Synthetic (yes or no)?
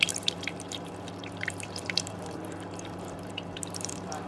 yes